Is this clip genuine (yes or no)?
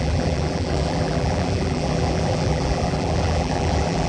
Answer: no